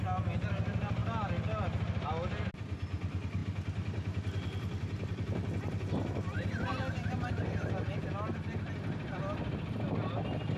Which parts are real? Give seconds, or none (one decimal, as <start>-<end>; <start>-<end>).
0.0-10.6